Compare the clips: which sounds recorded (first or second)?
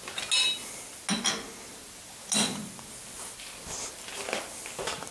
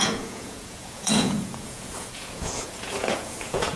first